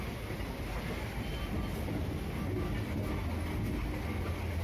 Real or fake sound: real